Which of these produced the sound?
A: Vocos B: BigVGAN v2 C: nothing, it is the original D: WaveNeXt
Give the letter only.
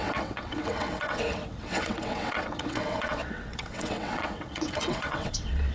D